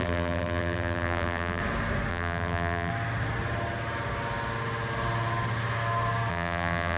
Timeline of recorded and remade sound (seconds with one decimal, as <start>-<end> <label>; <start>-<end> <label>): 0.0-1.6 remade; 1.6-2.1 recorded; 2.1-2.9 remade; 2.9-6.3 recorded; 6.3-7.0 remade